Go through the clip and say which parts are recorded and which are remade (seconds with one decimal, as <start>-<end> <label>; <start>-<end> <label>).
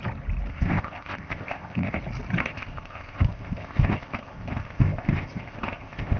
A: 0.0-0.5 recorded; 0.5-2.0 remade; 2.0-2.4 recorded; 2.4-6.2 remade